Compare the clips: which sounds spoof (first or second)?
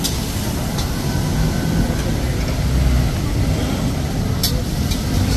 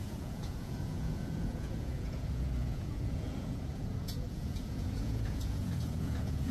second